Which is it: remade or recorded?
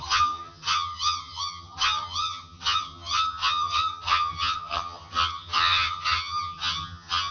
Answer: remade